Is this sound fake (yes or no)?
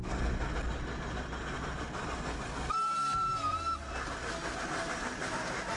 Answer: no